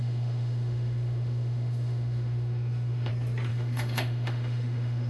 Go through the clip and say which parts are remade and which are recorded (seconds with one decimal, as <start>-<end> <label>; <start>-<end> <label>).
0.0-3.1 remade; 3.1-3.5 recorded; 3.5-5.1 remade